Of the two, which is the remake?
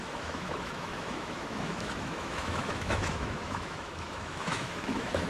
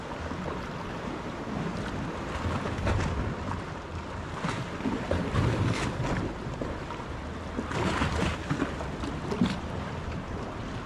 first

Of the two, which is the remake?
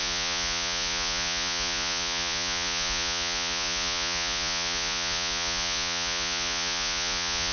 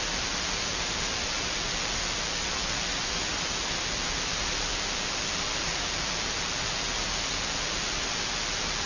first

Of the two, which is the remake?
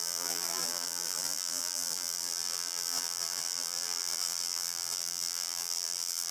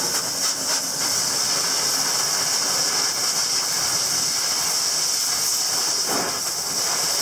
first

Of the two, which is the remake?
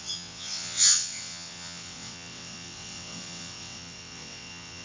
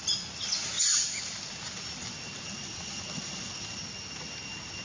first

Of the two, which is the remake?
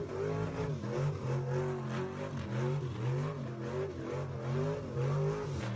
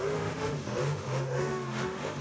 second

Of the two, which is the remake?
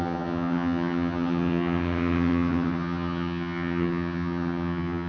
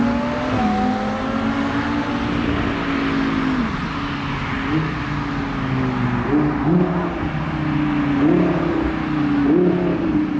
first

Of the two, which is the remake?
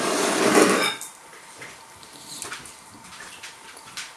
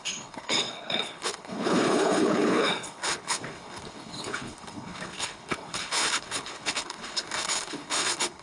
second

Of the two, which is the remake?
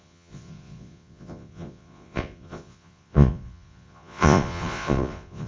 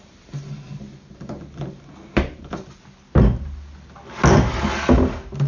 first